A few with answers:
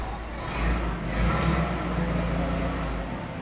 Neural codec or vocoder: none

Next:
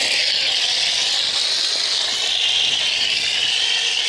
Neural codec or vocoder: none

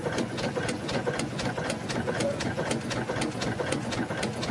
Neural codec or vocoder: vocoder, Vocos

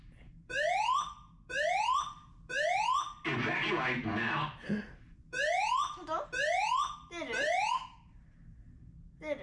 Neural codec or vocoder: none